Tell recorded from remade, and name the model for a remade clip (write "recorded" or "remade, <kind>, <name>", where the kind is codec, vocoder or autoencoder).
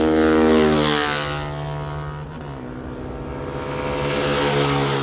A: recorded